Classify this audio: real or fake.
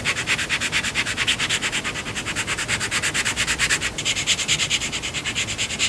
real